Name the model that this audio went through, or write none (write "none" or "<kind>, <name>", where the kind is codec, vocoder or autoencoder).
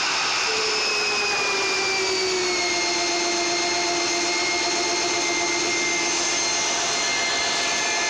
none